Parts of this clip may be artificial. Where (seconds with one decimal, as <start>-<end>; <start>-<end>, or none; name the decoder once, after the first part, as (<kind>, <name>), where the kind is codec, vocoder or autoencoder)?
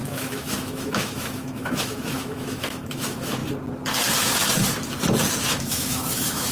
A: 0.0-3.4 (autoencoder, DAC-VAE); 5.4-6.5